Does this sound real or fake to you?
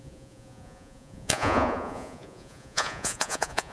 fake